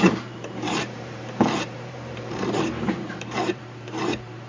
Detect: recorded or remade remade